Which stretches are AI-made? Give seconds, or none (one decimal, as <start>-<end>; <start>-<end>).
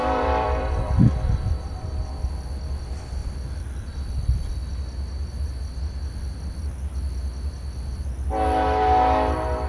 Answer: 0.0-2.1; 3.2-4.1